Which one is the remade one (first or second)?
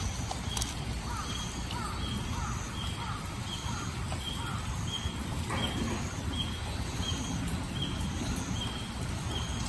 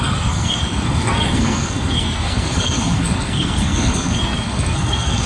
second